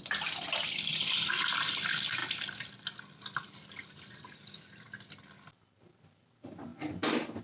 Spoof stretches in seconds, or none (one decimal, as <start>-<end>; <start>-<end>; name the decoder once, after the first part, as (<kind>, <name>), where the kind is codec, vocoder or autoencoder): none